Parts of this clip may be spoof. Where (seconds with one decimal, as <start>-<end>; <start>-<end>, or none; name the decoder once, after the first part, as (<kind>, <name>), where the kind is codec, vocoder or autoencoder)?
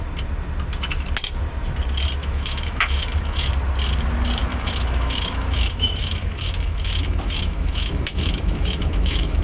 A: 2.2-3.5 (autoencoder, DAC-VAE); 4.5-9.4